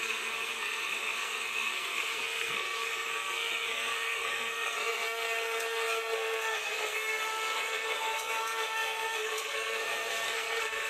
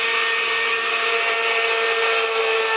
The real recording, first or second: second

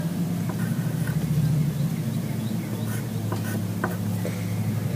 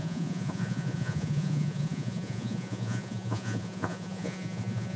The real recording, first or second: first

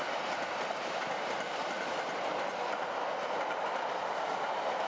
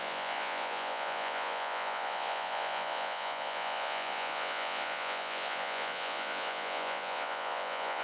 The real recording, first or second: first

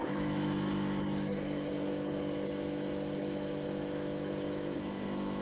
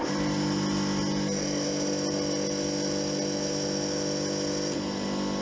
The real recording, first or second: second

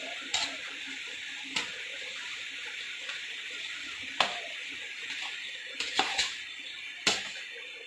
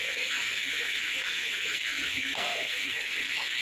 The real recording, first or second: first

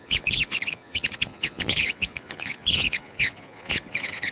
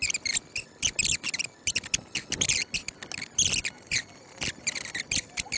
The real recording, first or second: second